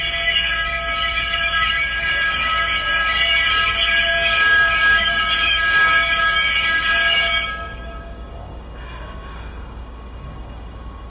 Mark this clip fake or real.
fake